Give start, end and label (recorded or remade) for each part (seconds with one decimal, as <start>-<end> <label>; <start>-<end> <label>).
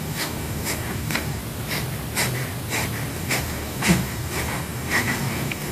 0.0-1.4 remade; 1.4-3.1 recorded; 3.1-5.7 remade